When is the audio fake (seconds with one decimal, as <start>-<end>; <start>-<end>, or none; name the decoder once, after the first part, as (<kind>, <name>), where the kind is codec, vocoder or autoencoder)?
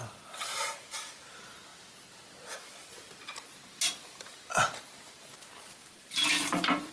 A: 5.8-6.9 (vocoder, BigVGAN v2)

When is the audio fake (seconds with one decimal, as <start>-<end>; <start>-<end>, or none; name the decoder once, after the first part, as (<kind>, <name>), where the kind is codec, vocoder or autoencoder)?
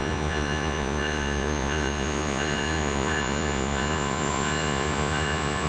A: 0.0-5.7 (vocoder, Vocos)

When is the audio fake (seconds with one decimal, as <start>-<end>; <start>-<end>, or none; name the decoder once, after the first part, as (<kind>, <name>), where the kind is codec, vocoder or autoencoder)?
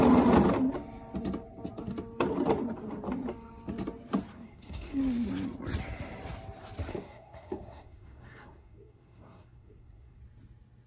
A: 4.3-5.0 (codec, SNAC); 6.9-10.2